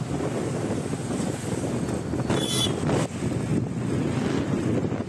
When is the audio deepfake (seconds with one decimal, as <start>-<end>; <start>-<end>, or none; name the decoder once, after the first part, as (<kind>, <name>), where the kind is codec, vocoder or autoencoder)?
none